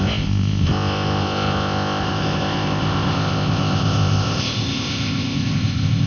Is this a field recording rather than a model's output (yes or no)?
no